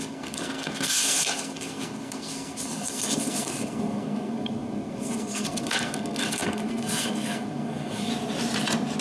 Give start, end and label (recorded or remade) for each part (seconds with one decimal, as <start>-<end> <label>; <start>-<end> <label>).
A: 0.0-8.1 remade; 8.1-9.0 recorded